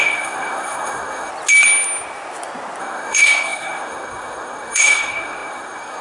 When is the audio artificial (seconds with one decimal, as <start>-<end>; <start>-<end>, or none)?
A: 0.0-1.3; 2.8-6.0